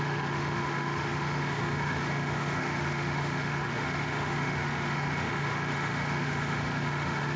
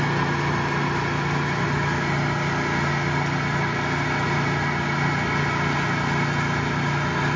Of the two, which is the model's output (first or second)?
first